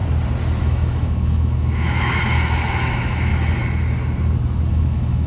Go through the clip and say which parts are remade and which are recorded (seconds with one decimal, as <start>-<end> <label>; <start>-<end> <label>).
0.0-0.6 recorded; 0.6-3.3 remade; 3.3-4.7 recorded; 4.7-5.3 remade